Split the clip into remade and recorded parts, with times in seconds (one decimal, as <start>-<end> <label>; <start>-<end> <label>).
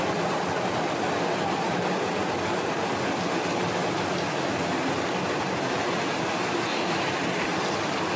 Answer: 0.0-6.7 recorded; 6.7-8.2 remade